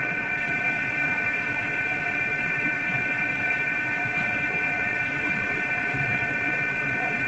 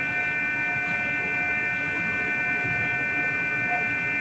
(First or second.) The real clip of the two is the second